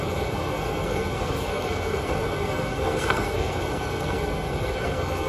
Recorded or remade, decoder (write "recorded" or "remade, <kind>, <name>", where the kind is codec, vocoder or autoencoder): remade, codec, SNAC